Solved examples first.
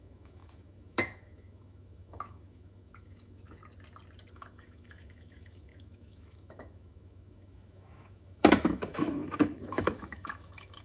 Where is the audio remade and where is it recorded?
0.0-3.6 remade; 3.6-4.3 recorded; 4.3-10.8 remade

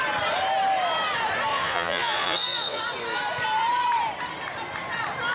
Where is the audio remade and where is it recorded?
0.0-1.5 recorded; 1.5-2.8 remade; 2.8-5.3 recorded

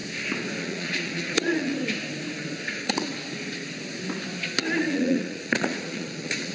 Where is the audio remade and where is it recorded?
0.0-0.6 recorded; 0.6-1.7 remade; 1.7-2.7 recorded; 2.7-3.1 remade; 3.1-4.8 recorded; 4.8-6.5 remade

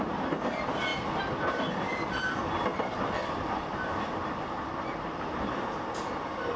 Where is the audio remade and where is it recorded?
0.0-2.7 recorded; 2.7-5.8 remade; 5.8-6.6 recorded

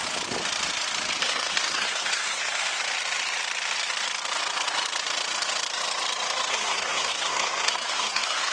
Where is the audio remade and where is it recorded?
0.0-1.2 recorded; 1.2-2.8 remade; 2.8-6.5 recorded; 6.5-8.5 remade

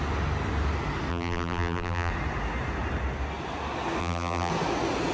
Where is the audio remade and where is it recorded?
0.0-1.1 recorded; 1.1-2.1 remade; 2.1-4.0 recorded; 4.0-4.5 remade; 4.5-5.1 recorded

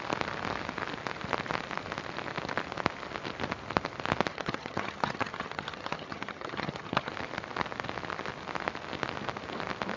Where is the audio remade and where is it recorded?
0.0-4.3 recorded; 4.3-7.1 remade; 7.1-10.0 recorded

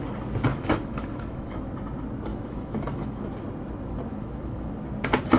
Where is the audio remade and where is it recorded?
0.0-0.5 recorded; 0.5-1.6 remade; 1.6-2.3 recorded; 2.3-3.2 remade; 3.2-4.1 recorded; 4.1-4.7 remade; 4.7-5.4 recorded